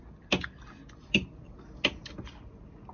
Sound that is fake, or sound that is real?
real